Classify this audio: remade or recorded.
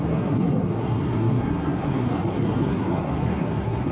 remade